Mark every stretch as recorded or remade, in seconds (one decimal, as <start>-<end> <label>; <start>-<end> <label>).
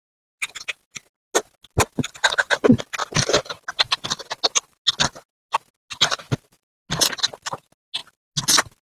0.0-8.8 recorded